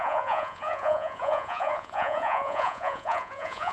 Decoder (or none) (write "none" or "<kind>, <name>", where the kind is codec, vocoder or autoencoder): vocoder, Vocos